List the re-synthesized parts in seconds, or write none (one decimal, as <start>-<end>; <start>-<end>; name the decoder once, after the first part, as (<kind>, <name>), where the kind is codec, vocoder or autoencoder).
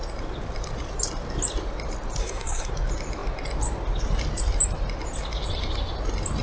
2.2-2.7 (codec, SNAC)